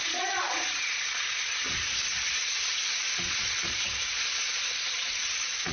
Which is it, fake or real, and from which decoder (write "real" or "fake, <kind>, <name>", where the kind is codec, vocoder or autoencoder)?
fake, vocoder, Vocos